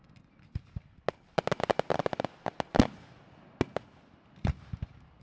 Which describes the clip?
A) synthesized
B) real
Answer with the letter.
B